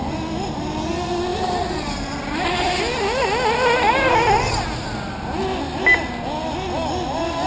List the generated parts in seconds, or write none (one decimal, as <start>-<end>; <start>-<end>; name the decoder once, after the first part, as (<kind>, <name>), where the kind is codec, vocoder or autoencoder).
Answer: none